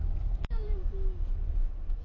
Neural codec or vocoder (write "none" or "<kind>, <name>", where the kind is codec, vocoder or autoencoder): none